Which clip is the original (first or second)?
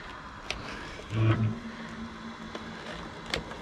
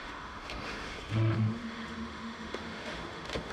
first